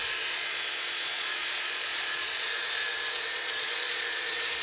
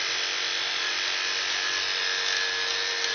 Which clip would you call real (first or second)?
second